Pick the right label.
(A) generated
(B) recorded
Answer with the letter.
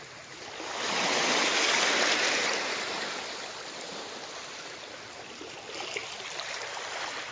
B